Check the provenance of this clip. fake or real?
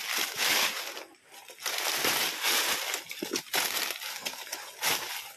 real